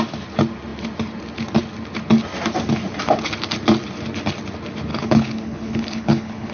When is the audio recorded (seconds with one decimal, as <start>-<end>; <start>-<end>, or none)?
0.0-4.9